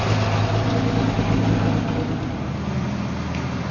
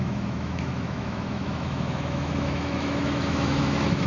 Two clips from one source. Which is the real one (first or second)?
first